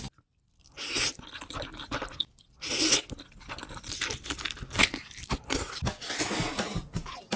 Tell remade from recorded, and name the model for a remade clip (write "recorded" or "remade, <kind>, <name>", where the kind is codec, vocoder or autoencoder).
recorded